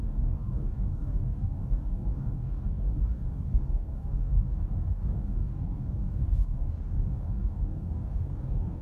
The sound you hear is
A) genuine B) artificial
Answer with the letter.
B